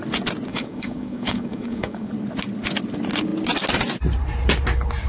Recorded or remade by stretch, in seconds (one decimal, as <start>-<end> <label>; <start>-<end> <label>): 0.0-0.5 recorded; 0.5-2.1 remade; 2.1-5.1 recorded